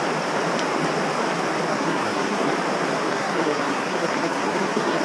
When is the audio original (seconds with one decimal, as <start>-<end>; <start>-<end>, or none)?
0.0-1.7; 2.5-3.1